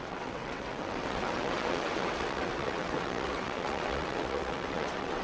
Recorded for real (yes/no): no